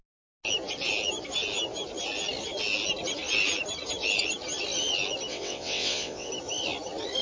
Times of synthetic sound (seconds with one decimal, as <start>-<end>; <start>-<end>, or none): 5.3-6.3